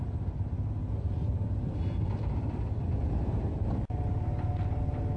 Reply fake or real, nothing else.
real